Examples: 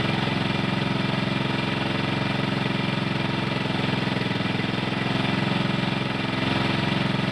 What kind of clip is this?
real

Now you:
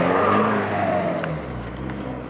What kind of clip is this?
real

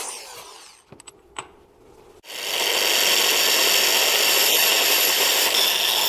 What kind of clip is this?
real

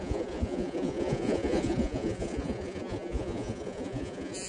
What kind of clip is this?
fake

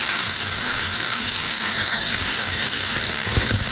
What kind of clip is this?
fake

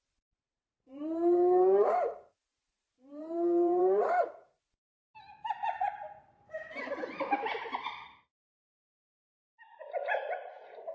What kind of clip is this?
fake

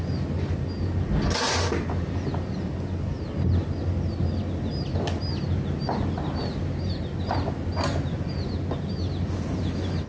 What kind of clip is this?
real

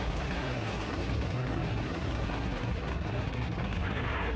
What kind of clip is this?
fake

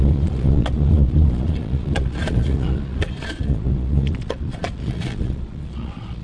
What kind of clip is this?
fake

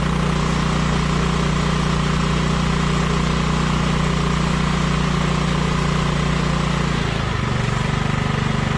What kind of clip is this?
real